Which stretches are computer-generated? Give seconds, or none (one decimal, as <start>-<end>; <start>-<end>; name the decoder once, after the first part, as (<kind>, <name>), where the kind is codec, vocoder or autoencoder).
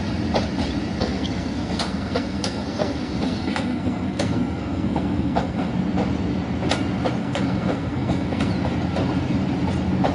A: 1.0-5.7 (codec, SNAC); 7.2-8.5